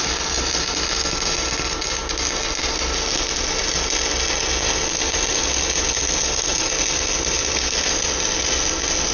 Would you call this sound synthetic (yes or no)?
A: no